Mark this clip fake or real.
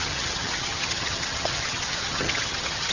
fake